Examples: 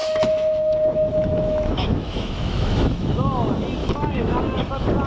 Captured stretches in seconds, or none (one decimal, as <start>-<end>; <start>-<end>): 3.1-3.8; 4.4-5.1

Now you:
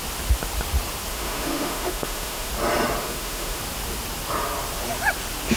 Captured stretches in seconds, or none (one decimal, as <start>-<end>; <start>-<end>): 0.0-1.1; 2.5-3.0; 3.6-5.6

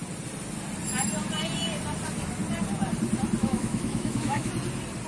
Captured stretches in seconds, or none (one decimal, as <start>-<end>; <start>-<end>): 0.0-3.4; 4.5-5.1

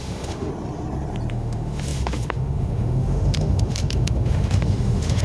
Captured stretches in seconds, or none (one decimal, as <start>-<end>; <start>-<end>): 0.5-1.3